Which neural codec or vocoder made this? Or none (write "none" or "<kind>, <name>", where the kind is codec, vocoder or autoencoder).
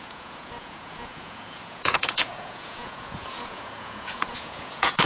vocoder, Vocos